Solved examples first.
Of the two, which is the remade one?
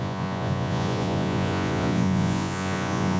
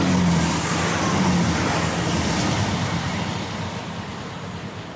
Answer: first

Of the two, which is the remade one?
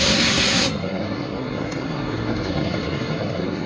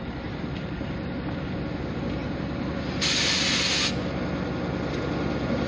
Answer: first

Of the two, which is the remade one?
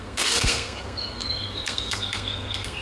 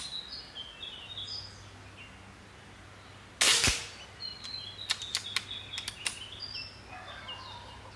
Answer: first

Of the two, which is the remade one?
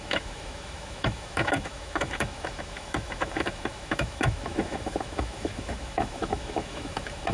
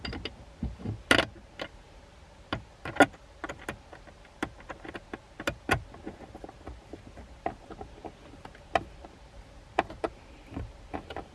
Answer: first